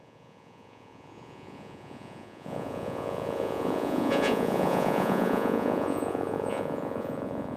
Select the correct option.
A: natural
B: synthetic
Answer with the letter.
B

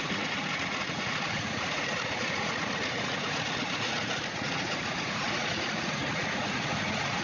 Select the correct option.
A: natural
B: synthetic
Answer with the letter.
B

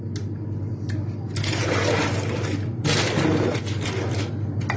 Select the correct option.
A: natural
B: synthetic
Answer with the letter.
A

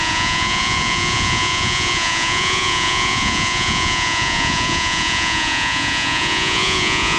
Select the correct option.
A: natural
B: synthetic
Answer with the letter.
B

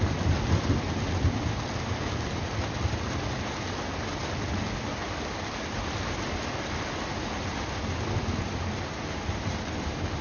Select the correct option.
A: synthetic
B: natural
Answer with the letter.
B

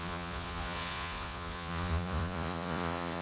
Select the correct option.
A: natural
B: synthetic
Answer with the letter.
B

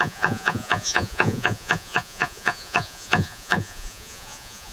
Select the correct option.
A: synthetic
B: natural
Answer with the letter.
A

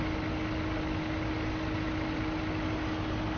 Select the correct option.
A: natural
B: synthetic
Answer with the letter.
A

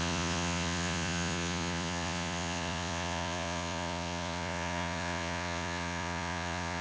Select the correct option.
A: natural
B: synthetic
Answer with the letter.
B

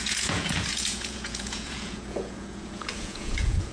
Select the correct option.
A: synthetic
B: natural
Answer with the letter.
A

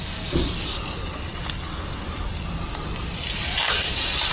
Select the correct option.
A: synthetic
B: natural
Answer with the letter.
B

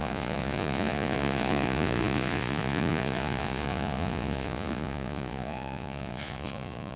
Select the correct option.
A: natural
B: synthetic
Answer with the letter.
B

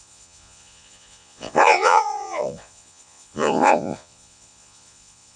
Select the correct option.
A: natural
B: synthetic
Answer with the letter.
B